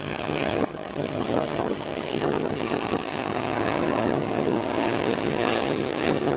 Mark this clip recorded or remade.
remade